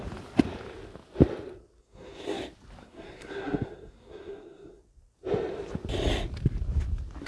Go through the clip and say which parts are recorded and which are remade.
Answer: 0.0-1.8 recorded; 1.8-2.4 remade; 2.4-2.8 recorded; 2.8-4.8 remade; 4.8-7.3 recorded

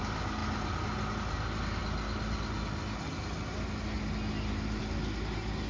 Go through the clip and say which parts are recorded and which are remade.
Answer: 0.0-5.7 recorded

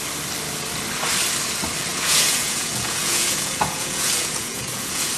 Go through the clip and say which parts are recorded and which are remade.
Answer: 0.0-1.9 recorded; 1.9-5.2 remade

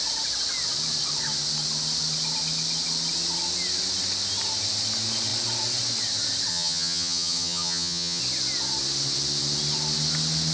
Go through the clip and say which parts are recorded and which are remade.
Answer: 0.0-6.5 recorded; 6.5-8.2 remade; 8.2-10.5 recorded

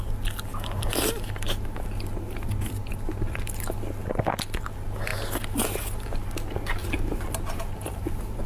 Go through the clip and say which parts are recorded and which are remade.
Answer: 0.0-6.8 recorded; 6.8-8.5 remade